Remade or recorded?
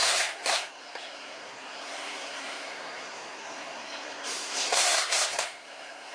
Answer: remade